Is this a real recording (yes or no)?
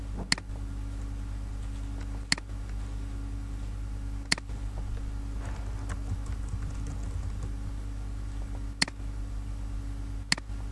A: yes